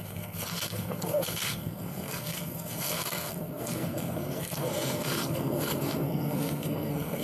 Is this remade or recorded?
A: remade